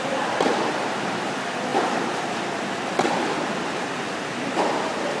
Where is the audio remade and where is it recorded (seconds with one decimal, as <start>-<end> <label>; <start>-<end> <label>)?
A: 0.0-1.7 recorded; 1.7-2.3 remade; 2.3-5.2 recorded